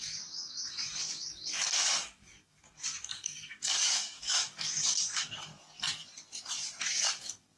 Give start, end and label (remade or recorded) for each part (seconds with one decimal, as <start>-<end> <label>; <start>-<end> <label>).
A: 0.0-5.5 remade; 5.5-6.8 recorded; 6.8-7.6 remade